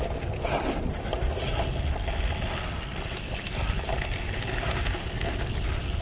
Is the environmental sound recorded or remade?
recorded